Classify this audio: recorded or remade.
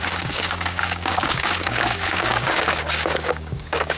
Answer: remade